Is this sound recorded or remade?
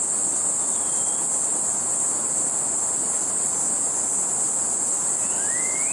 recorded